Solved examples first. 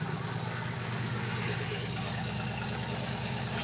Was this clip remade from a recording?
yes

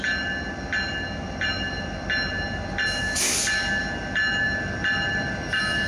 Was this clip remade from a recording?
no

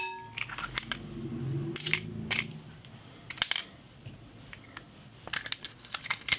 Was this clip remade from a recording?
no